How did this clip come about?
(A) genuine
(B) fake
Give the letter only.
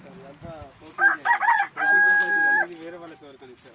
A